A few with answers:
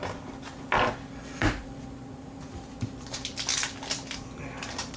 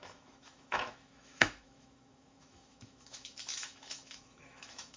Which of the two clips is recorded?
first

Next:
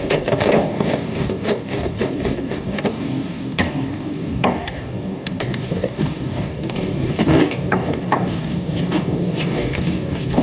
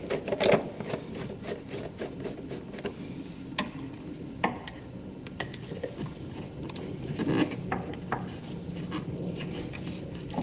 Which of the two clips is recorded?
second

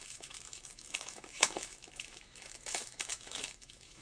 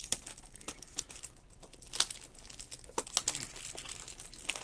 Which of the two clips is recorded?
second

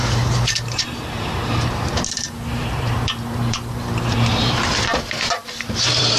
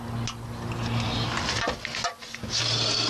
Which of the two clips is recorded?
second